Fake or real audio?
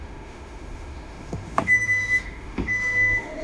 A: fake